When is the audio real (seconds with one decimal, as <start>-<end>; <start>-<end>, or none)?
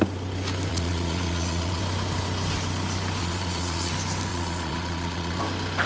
0.0-0.7; 1.8-3.2; 3.9-4.3; 5.4-5.9